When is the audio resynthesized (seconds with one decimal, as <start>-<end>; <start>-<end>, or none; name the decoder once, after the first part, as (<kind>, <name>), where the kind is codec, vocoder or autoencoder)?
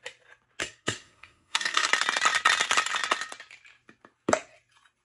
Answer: 0.6-1.9 (codec, SNAC)